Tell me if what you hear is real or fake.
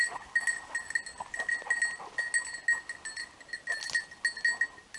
real